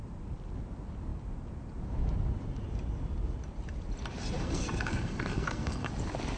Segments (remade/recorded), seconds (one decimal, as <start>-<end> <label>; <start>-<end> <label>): 0.0-4.4 recorded; 4.4-5.9 remade; 5.9-6.4 recorded